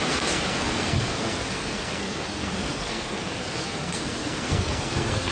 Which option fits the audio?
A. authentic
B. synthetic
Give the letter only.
B